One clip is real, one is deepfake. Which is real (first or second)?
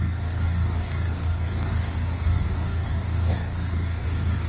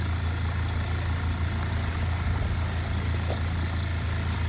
second